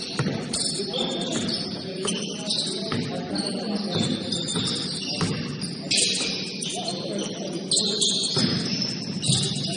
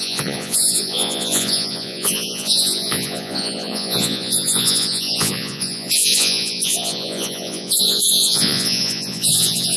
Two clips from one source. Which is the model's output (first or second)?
second